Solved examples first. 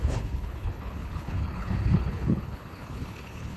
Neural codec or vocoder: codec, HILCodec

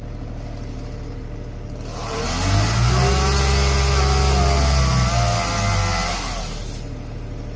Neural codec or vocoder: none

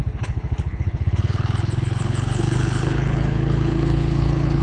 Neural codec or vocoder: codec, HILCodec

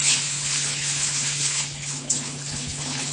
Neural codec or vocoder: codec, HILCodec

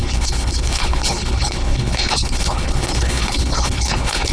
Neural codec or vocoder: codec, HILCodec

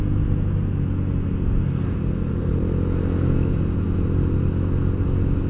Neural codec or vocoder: none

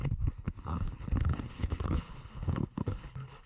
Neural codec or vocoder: codec, HILCodec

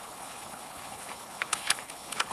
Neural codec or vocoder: codec, HILCodec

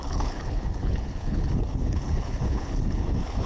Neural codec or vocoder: codec, HILCodec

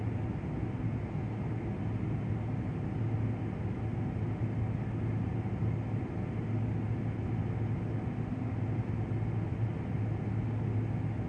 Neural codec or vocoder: none